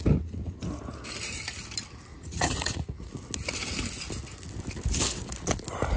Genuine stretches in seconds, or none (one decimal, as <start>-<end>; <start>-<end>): 0.0-2.1; 3.1-6.0